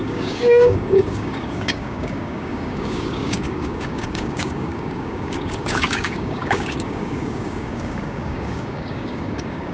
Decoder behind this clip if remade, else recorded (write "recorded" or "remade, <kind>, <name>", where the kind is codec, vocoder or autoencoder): remade, codec, DAC